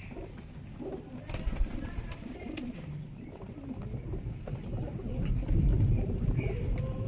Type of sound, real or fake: real